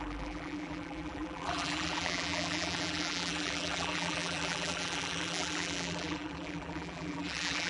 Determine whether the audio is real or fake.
fake